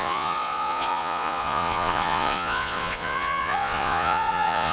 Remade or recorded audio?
remade